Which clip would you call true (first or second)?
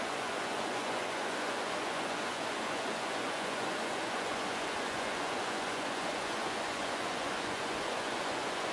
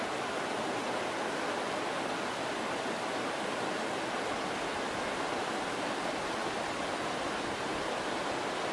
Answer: second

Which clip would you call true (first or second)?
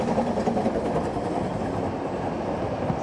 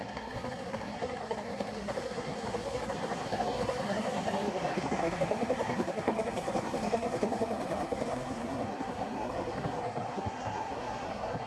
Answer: first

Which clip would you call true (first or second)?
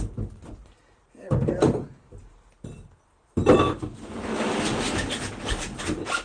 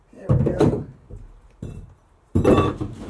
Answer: first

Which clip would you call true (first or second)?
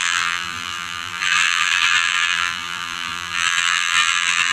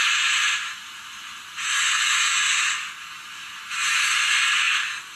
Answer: second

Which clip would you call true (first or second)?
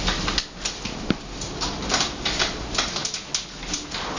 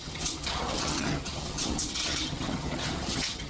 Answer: first